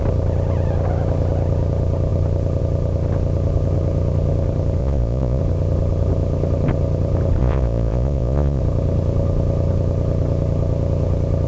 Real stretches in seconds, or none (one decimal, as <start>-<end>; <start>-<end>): 0.0-4.8; 5.4-7.4; 8.6-11.5